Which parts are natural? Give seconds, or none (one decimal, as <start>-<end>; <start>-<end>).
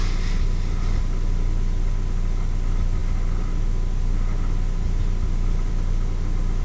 0.0-6.6